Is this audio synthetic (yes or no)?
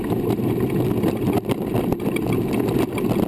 no